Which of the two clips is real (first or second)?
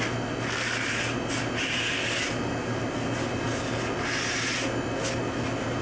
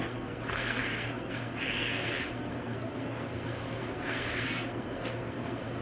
first